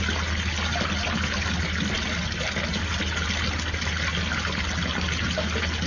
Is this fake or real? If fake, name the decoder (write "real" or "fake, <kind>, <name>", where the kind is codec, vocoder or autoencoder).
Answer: real